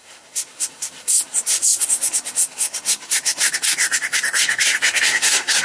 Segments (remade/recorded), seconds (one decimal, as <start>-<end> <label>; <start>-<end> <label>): 0.0-5.6 remade